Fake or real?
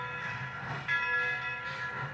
real